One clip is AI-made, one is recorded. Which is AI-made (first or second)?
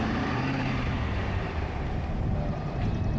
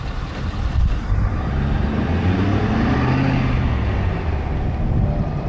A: first